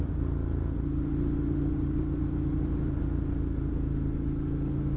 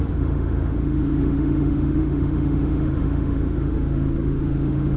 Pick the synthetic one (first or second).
second